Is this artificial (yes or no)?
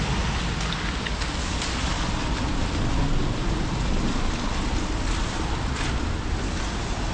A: no